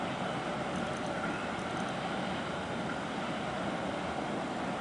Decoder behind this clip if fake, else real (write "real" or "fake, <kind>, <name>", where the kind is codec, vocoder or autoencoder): real